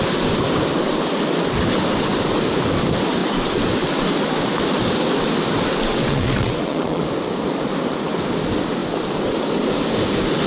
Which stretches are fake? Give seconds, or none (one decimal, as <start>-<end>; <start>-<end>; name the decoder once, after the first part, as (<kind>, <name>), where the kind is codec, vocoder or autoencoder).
5.9-7.0 (vocoder, WaveNeXt)

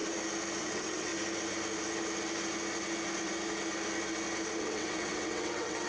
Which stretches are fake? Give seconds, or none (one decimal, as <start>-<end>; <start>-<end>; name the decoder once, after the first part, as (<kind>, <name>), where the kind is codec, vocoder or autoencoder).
0.6-1.1 (vocoder, WaveNeXt); 4.6-5.9

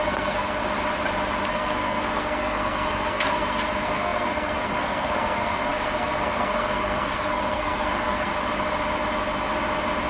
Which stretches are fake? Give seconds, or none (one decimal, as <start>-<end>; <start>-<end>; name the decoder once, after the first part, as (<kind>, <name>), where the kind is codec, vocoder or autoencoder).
0.0-0.6 (codec, SNAC); 1.5-8.3

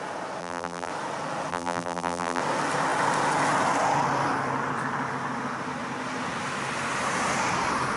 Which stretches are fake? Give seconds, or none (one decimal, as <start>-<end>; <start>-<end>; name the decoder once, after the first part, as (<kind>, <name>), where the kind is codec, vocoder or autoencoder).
0.4-0.9 (vocoder, BigVGAN v2); 1.5-2.4

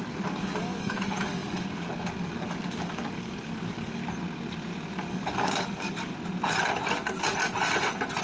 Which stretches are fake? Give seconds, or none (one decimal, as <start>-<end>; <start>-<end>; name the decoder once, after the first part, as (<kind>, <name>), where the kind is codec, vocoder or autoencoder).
0.0-4.0 (codec, DAC); 4.9-6.1

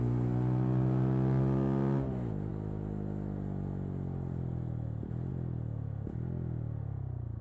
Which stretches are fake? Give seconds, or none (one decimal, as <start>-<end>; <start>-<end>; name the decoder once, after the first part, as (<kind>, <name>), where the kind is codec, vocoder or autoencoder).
none

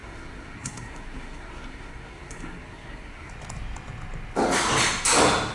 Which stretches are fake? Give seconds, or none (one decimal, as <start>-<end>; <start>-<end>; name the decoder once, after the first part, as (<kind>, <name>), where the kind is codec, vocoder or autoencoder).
0.0-3.3 (codec, SNAC)